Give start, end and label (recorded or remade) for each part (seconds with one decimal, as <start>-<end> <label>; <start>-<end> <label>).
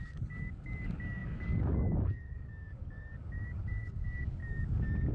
0.0-4.4 remade; 4.4-5.1 recorded